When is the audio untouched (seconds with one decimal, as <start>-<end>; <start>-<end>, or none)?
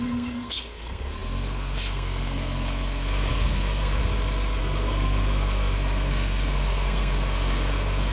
4.0-4.6